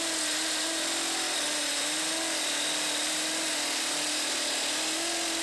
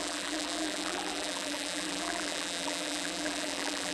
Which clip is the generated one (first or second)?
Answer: second